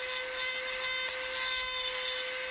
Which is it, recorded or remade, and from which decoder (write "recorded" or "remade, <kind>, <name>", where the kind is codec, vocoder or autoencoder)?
recorded